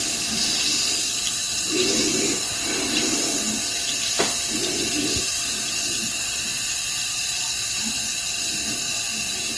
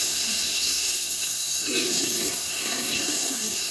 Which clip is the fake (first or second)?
second